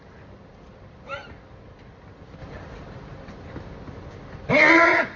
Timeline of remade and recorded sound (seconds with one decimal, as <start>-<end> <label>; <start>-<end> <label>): 0.0-5.2 recorded